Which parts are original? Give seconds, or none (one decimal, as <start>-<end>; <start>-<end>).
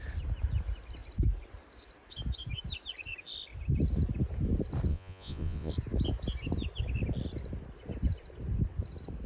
0.0-4.9; 5.7-9.3